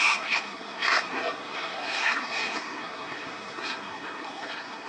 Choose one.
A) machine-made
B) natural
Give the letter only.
A